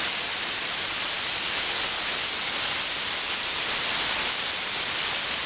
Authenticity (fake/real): real